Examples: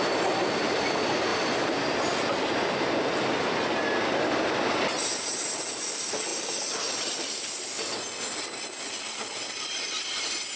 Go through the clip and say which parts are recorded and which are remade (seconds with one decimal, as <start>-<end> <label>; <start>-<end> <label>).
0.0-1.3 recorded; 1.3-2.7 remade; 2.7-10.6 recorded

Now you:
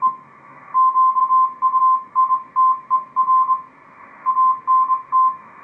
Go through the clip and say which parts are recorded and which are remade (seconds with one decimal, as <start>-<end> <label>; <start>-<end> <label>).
0.0-1.2 remade; 1.2-1.8 recorded; 1.8-2.2 remade; 2.2-5.1 recorded; 5.1-5.6 remade

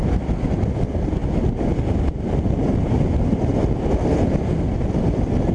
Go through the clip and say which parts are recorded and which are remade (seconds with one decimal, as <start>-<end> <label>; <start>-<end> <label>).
0.0-5.5 recorded

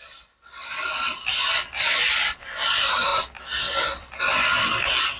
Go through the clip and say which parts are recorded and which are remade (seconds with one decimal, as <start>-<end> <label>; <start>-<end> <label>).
0.0-3.1 remade; 3.1-4.2 recorded; 4.2-5.2 remade

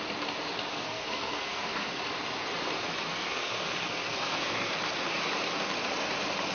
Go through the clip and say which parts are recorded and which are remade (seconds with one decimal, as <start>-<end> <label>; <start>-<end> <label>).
0.0-0.7 recorded; 0.7-2.0 remade; 2.0-3.1 recorded; 3.1-4.7 remade; 4.7-6.5 recorded